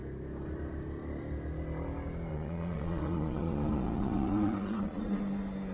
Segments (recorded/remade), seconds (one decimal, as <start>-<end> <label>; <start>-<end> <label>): 0.0-2.3 recorded; 2.3-5.2 remade; 5.2-5.7 recorded

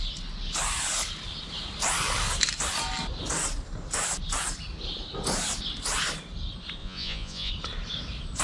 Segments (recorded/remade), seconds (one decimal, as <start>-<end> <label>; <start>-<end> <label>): 0.0-6.8 recorded; 6.8-7.5 remade; 7.5-8.4 recorded

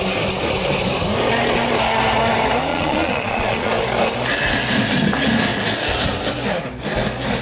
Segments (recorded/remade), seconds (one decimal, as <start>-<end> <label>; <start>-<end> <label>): 0.0-2.7 recorded; 2.7-3.7 remade; 3.7-7.4 recorded

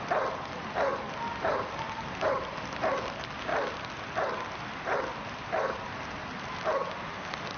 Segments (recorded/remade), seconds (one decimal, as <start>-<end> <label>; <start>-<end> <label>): 0.0-7.6 recorded

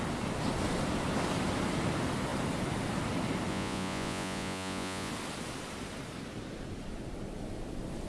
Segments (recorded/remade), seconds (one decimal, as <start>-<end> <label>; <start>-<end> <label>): 0.0-3.5 recorded; 3.5-5.1 remade; 5.1-8.1 recorded

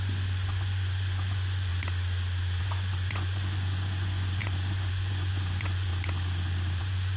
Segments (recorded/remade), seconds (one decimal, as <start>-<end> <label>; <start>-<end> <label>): 0.0-1.7 remade; 1.7-2.6 recorded; 2.6-5.9 remade; 5.9-6.8 recorded; 6.8-7.2 remade

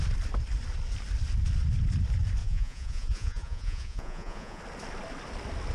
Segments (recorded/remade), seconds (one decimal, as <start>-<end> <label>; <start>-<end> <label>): 0.0-2.4 recorded; 2.4-4.6 remade; 4.6-5.7 recorded

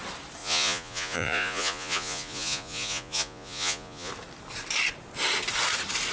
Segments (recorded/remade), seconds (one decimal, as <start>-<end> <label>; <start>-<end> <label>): 0.0-0.4 recorded; 0.4-4.1 remade; 4.1-6.1 recorded